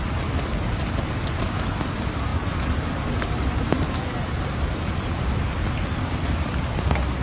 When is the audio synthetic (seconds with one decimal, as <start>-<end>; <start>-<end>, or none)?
none